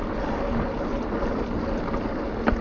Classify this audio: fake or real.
real